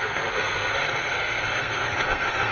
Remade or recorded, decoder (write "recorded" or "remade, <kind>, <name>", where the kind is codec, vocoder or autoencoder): remade, codec, SNAC